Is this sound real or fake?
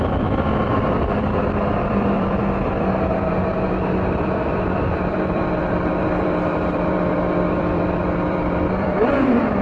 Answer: fake